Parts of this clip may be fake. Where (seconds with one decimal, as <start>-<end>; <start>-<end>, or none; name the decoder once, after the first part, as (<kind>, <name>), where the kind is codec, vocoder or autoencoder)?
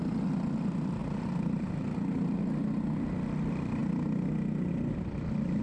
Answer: 1.0-2.4 (vocoder, BigVGAN v2)